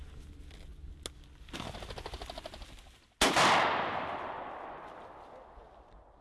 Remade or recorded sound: recorded